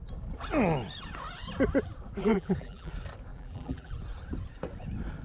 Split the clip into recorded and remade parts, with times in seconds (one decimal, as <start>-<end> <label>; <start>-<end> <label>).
0.0-2.2 recorded; 2.2-2.9 remade; 2.9-3.3 recorded; 3.3-3.9 remade; 3.9-5.2 recorded